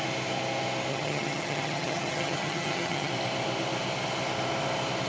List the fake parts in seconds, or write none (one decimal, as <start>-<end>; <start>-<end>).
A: 0.9-3.1